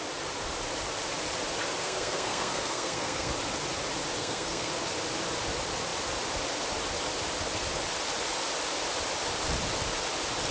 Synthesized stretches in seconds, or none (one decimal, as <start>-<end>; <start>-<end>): 1.8-3.3; 4.2-4.7